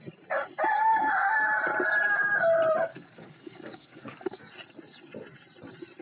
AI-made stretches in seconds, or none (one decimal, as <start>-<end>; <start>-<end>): 2.9-4.4